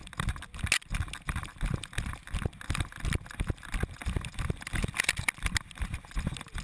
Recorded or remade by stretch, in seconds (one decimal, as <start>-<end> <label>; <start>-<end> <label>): 0.0-6.6 recorded